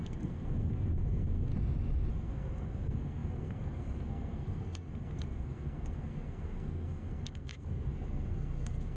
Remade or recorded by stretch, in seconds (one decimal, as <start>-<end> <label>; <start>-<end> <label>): 0.0-1.5 remade; 1.5-2.1 recorded; 2.1-9.0 remade